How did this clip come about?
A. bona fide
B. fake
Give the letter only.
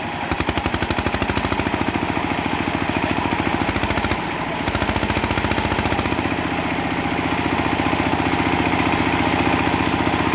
A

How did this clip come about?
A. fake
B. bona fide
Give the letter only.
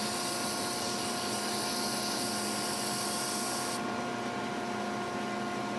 B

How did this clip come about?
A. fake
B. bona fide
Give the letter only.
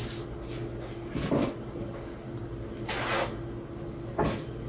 B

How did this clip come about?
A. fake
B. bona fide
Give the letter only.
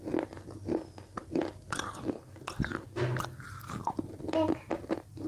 B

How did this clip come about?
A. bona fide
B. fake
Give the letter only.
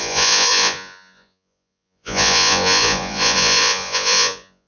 B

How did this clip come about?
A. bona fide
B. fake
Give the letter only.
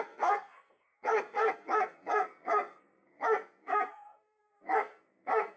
B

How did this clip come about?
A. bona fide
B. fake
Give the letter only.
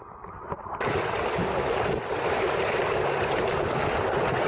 A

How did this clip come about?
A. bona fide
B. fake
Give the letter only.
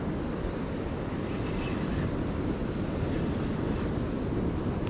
A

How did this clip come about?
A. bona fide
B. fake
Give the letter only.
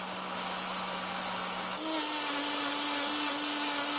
A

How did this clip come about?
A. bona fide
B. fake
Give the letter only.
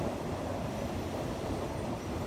A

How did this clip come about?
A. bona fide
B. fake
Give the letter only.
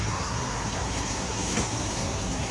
B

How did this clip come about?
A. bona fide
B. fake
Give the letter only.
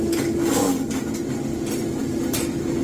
A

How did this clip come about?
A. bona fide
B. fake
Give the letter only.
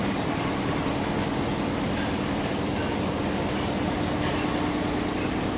A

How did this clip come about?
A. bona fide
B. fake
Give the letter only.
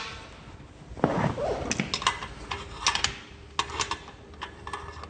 A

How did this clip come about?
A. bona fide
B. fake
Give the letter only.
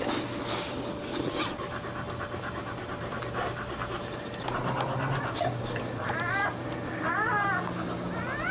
A